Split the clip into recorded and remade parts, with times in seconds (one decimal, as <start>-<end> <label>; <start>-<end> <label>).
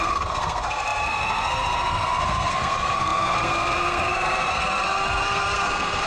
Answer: 0.0-6.1 remade